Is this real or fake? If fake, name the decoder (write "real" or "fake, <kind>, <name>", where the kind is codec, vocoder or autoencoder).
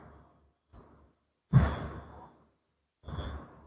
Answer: real